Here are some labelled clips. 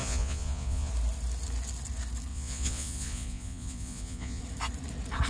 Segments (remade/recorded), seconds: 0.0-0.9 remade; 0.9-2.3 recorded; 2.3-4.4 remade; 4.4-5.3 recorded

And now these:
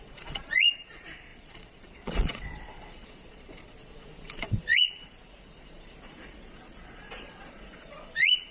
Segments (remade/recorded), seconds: 0.0-8.5 remade

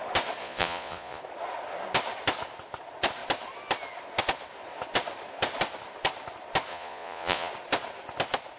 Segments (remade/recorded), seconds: 0.0-0.4 recorded; 0.4-1.2 remade; 1.2-6.7 recorded; 6.7-7.5 remade; 7.5-8.6 recorded

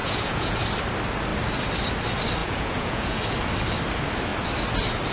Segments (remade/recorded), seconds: 0.0-0.6 remade; 0.6-2.4 recorded; 2.4-3.2 remade; 3.2-5.1 recorded

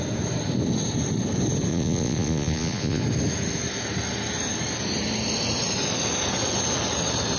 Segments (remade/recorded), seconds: 0.0-1.7 recorded; 1.7-3.0 remade; 3.0-7.4 recorded

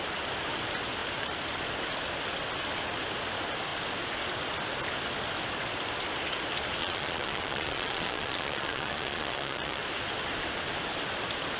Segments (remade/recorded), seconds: 0.0-6.8 recorded; 6.8-9.8 remade; 9.8-11.6 recorded

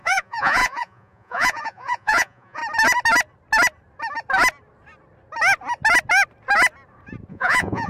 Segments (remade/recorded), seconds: 0.0-2.6 remade; 2.6-7.3 recorded; 7.3-7.9 remade

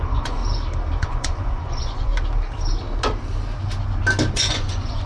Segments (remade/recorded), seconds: 0.0-0.4 remade; 0.4-1.0 recorded; 1.0-2.1 remade; 2.1-4.3 recorded; 4.3-5.1 remade